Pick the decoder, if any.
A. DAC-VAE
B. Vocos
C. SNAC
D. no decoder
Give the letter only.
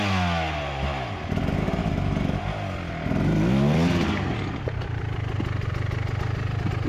D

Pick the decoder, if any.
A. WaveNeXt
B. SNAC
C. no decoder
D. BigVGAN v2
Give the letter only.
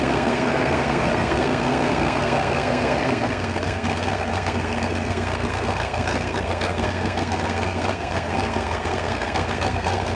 B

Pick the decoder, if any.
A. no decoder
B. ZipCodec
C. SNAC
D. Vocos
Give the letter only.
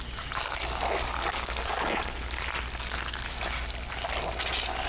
A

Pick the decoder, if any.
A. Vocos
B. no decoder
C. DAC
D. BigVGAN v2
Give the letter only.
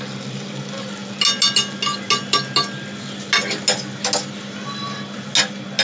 B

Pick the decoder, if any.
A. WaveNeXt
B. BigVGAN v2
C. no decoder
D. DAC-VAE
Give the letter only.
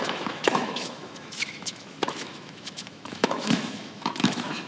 D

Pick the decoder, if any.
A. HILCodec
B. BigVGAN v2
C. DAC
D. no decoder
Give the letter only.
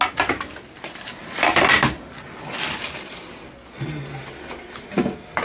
D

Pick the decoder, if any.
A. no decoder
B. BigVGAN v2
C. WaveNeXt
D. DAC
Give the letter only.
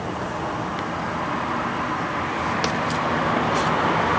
A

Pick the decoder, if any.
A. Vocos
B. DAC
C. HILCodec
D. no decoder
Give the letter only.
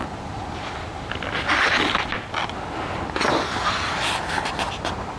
D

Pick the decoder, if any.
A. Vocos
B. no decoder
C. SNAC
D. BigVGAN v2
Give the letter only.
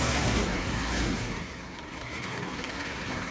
C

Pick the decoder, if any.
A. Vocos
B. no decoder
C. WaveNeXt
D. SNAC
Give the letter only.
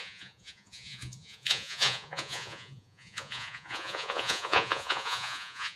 A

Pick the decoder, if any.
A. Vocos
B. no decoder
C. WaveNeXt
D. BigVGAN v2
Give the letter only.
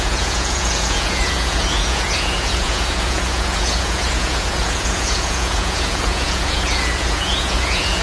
A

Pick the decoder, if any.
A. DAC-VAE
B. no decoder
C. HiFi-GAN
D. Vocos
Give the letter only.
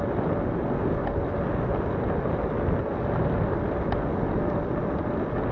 B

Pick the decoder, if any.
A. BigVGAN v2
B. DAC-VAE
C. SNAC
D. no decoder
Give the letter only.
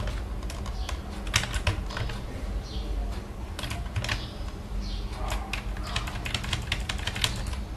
D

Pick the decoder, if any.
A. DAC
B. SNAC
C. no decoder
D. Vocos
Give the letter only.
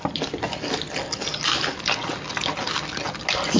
C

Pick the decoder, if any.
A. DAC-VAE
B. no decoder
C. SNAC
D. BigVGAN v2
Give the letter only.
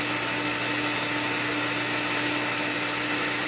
B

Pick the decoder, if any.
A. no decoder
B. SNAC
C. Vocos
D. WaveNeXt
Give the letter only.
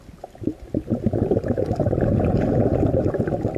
A